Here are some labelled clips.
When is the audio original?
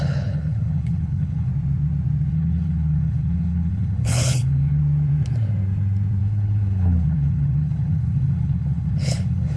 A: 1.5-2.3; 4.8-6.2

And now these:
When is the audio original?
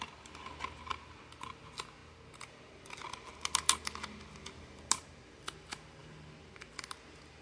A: 0.0-7.4